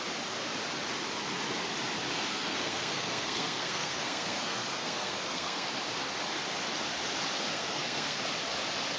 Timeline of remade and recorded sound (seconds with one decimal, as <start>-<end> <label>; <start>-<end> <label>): 0.0-2.3 recorded; 2.3-5.7 remade; 5.7-7.5 recorded; 7.5-8.2 remade; 8.2-9.0 recorded